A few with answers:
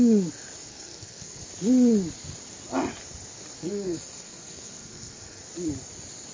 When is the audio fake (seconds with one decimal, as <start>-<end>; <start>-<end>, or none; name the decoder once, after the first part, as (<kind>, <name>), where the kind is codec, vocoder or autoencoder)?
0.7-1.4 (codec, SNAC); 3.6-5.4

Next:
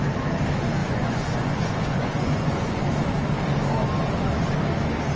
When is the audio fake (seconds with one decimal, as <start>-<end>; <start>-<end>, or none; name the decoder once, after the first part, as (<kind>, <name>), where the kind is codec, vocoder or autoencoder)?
0.8-2.8 (vocoder, Vocos)

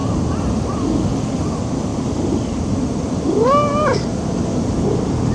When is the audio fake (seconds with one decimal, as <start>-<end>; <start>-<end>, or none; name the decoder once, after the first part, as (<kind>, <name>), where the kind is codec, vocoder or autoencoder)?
0.0-0.7 (vocoder, BigVGAN v2)